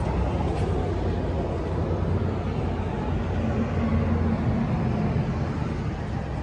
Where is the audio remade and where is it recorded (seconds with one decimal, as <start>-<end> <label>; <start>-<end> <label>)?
0.0-6.4 recorded